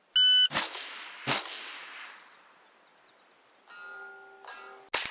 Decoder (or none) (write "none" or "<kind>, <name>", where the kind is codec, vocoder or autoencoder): none